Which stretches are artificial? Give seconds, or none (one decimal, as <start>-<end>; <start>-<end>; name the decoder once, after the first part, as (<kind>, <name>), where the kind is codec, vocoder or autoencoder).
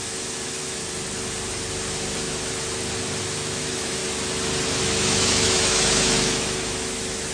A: 0.0-0.8 (autoencoder, DAC-VAE); 3.2-4.0; 4.8-7.3